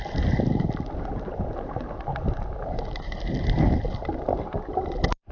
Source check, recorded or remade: remade